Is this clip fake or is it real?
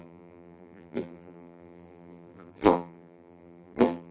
fake